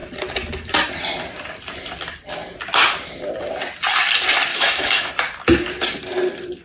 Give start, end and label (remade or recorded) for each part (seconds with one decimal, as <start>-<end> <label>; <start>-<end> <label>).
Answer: 0.0-4.5 recorded; 4.5-5.1 remade; 5.1-6.6 recorded